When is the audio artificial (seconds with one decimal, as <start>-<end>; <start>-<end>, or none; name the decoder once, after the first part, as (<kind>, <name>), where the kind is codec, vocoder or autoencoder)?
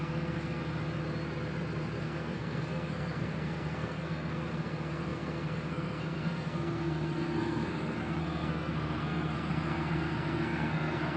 0.0-0.6 (codec, SNAC); 2.0-11.2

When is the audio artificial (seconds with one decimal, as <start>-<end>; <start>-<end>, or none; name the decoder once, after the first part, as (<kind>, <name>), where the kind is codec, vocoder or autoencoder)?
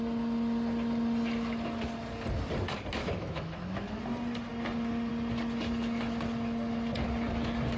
3.0-4.0 (autoencoder, DAC-VAE)